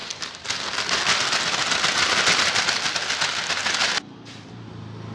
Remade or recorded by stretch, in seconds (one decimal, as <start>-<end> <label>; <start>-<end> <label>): 0.0-5.1 recorded